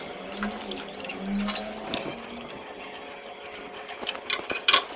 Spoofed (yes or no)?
no